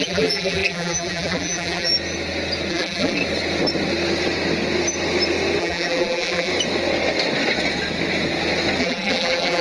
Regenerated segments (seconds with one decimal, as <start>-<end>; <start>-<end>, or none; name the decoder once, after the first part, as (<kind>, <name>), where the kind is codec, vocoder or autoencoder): 0.0-1.9 (vocoder, BigVGAN v2); 2.7-3.2; 5.6-6.5; 8.8-9.6